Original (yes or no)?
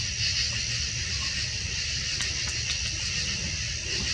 yes